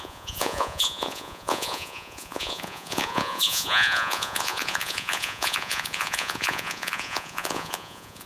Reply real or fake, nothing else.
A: fake